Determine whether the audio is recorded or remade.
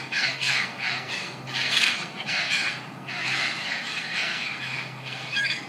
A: remade